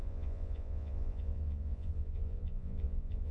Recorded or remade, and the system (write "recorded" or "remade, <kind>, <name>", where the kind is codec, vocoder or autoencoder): remade, vocoder, Vocos